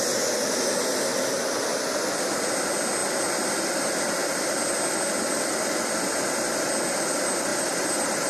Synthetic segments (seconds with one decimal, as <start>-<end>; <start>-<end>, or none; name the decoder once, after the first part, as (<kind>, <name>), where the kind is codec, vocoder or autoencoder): 1.1-2.1 (vocoder, BigVGAN v2); 3.0-6.7; 7.5-8.3

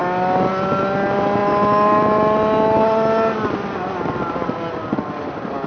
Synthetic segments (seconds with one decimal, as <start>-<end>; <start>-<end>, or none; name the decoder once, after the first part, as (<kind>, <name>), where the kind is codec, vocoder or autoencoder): none

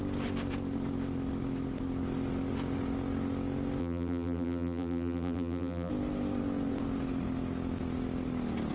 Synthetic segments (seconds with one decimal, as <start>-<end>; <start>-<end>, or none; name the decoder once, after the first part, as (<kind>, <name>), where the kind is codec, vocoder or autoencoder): 3.8-5.9 (vocoder, BigVGAN v2)

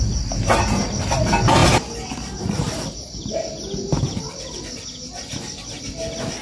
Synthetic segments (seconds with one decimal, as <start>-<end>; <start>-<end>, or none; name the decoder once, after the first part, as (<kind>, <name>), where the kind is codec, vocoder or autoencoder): none

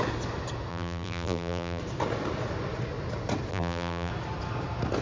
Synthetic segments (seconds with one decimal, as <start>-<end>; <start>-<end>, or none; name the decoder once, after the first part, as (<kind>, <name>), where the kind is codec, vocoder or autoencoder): 0.7-1.8 (vocoder, BigVGAN v2); 3.5-4.1

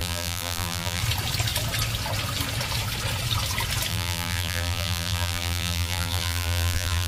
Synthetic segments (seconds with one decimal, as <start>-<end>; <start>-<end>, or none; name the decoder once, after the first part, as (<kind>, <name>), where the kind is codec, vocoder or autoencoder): 0.0-1.0 (vocoder, BigVGAN v2); 3.9-7.1

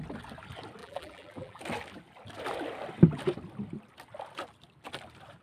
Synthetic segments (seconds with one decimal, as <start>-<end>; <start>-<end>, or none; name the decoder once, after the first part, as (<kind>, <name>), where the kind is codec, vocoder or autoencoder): 0.8-1.6 (vocoder, BigVGAN v2)